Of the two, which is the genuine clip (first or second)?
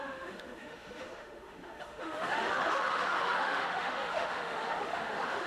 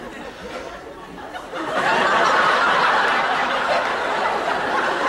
second